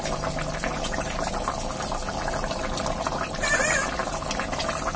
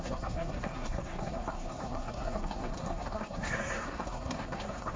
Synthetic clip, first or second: second